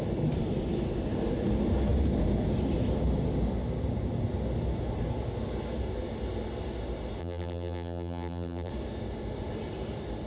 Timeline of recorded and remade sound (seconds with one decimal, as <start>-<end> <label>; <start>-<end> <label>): 0.0-7.2 recorded; 7.2-8.7 remade; 8.7-10.3 recorded